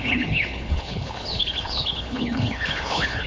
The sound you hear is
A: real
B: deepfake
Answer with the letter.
B